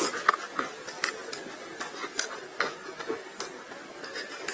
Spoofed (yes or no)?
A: no